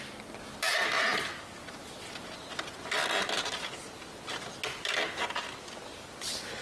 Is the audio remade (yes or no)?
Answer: no